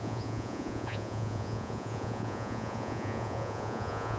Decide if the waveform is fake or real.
fake